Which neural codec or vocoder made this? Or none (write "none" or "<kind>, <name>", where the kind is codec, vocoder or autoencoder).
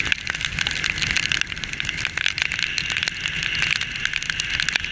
none